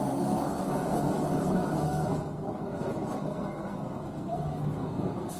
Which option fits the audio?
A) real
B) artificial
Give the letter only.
B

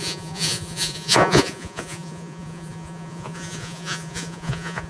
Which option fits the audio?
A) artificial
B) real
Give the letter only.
A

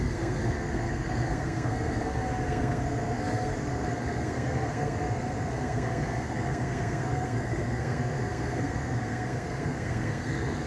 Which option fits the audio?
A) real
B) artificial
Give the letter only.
B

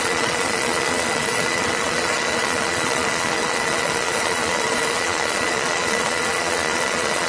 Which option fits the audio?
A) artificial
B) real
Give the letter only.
A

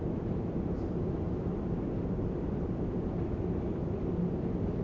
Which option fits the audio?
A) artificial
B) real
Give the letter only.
B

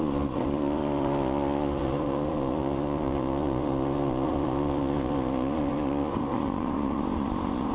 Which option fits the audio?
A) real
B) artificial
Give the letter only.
B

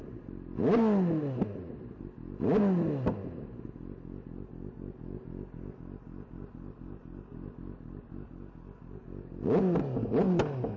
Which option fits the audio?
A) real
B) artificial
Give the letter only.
A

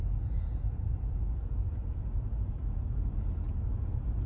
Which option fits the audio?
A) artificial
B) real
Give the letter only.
A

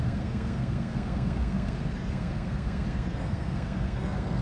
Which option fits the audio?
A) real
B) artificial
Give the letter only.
B